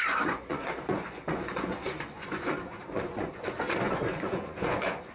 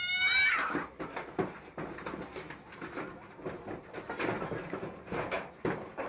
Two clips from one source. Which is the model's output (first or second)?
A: first